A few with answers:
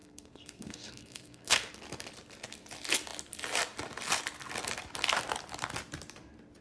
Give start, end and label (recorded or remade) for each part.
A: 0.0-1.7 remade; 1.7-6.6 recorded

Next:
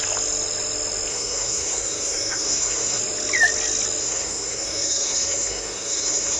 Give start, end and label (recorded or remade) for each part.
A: 0.0-1.1 recorded; 1.1-3.0 remade; 3.0-4.0 recorded; 4.0-6.4 remade

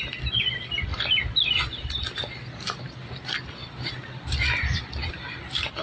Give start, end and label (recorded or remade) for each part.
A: 0.0-5.8 recorded

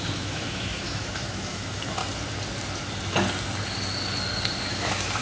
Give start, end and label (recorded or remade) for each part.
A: 0.0-2.0 remade; 2.0-4.7 recorded; 4.7-5.2 remade

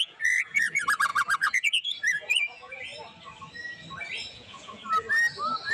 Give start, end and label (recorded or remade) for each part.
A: 0.0-2.9 remade; 2.9-4.3 recorded; 4.3-4.8 remade; 4.8-5.7 recorded

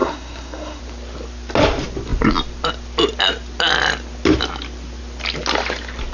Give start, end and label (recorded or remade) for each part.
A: 0.0-0.8 remade; 0.8-6.1 recorded

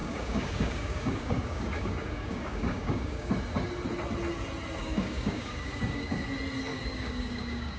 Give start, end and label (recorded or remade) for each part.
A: 0.0-3.3 remade; 3.3-4.8 recorded; 4.8-6.2 remade; 6.2-6.7 recorded; 6.7-7.8 remade

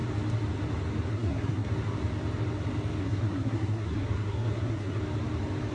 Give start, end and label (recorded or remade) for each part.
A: 0.0-1.1 recorded; 1.1-1.7 remade; 1.7-3.0 recorded; 3.0-5.0 remade; 5.0-5.7 recorded